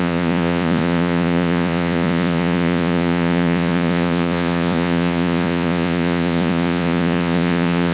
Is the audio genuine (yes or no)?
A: no